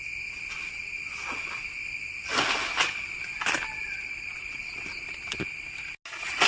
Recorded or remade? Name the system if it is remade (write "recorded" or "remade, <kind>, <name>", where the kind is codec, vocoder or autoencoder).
recorded